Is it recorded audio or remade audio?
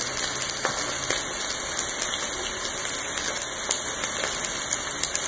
recorded